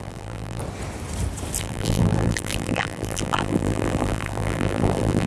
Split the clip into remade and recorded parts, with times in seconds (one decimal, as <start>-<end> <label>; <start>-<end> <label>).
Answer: 0.0-0.6 remade; 0.6-1.6 recorded; 1.6-5.3 remade